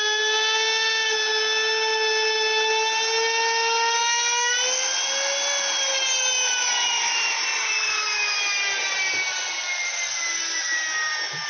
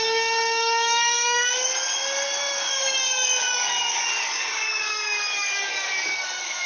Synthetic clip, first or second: second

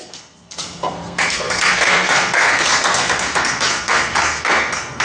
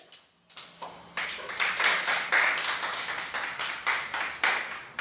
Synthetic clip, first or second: first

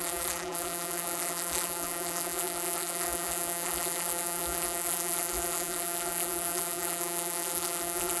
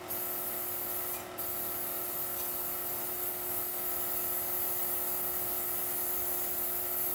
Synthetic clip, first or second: first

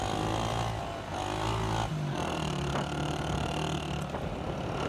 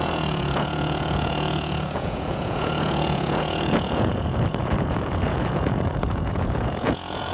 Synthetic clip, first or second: second